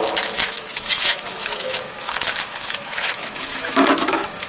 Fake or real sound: fake